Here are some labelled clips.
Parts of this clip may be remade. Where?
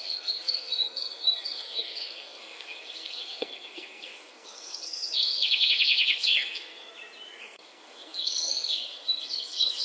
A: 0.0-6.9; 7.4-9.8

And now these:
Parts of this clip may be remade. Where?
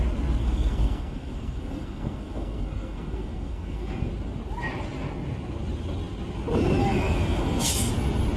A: 0.4-4.1; 6.8-7.9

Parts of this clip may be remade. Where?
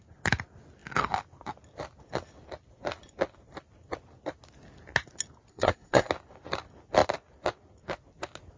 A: 5.5-6.1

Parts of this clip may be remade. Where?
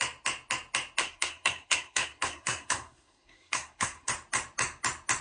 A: 1.0-4.1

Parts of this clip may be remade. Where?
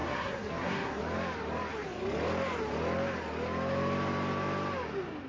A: 0.0-1.0